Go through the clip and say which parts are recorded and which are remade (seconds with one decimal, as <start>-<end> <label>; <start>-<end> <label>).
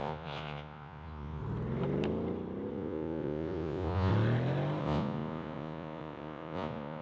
0.0-1.4 remade; 1.4-2.7 recorded; 2.7-4.1 remade; 4.1-4.8 recorded; 4.8-7.0 remade